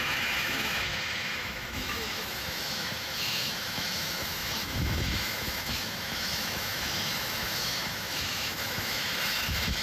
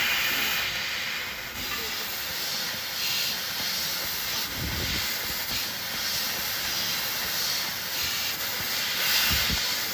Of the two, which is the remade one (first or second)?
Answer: first